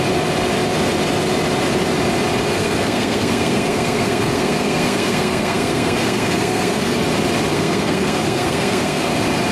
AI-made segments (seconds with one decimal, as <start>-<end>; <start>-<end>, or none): 2.5-7.0; 7.5-9.1